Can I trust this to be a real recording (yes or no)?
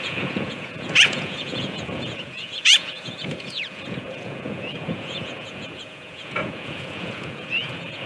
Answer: no